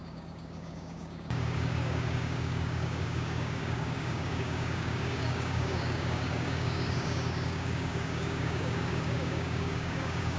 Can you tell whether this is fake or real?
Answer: fake